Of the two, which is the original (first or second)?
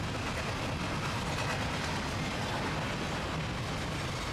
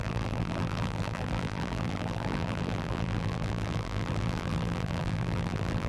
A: first